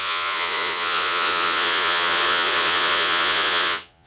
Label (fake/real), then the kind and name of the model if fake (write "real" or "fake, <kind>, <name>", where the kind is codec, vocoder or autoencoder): fake, vocoder, Vocos